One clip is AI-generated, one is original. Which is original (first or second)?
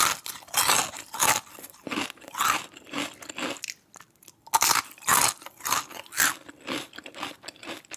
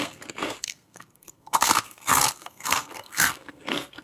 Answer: first